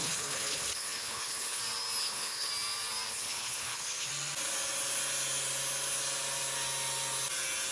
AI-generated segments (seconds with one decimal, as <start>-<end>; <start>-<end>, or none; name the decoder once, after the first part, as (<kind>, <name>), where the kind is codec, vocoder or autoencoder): 0.0-1.6 (codec, HILCodec); 2.0-2.5; 3.1-4.1